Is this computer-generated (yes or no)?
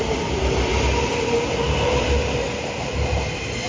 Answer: no